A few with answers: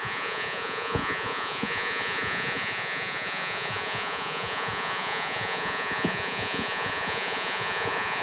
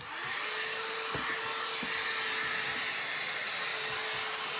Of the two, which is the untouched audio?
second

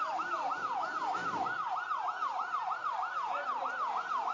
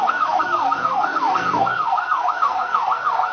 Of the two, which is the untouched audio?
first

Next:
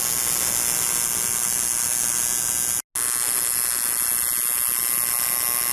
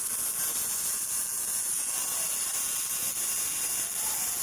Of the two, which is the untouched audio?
first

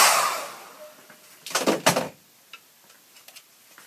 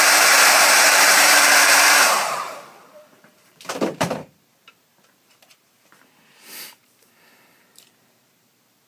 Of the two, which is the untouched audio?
first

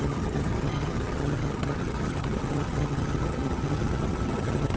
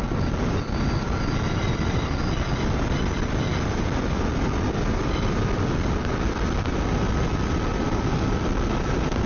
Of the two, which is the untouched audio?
second